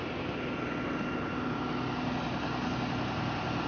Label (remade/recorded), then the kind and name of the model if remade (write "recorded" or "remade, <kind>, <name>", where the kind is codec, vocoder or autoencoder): recorded